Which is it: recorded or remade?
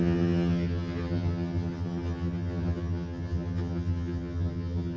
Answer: remade